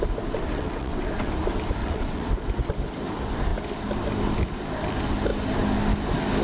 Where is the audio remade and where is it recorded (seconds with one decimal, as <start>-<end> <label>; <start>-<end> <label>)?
0.0-0.5 recorded; 0.5-1.1 remade; 1.1-1.8 recorded; 1.8-2.3 remade; 2.3-6.4 recorded